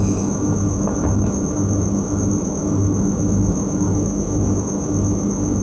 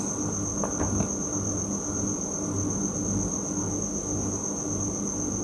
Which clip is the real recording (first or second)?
second